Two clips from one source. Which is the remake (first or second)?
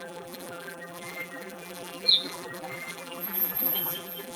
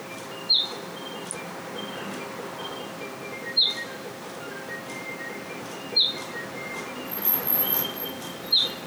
first